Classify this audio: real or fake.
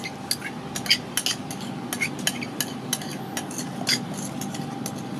real